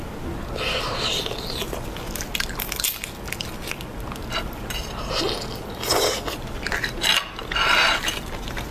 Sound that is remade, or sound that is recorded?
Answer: recorded